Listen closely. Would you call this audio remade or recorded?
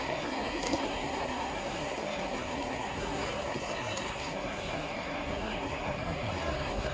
remade